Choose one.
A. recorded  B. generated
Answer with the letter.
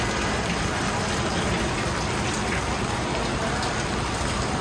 A